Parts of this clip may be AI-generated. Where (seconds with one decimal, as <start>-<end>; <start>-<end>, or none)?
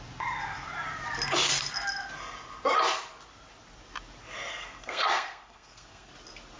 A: 4.5-6.1